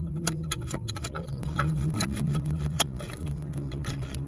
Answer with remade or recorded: remade